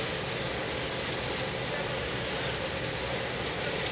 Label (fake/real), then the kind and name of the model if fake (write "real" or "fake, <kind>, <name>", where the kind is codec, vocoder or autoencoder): real